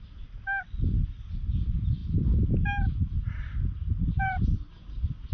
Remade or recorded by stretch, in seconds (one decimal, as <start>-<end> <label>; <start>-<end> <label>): 0.0-5.3 recorded